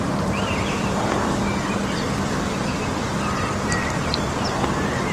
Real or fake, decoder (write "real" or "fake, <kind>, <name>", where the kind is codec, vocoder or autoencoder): real